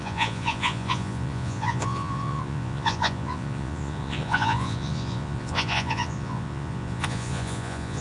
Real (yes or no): no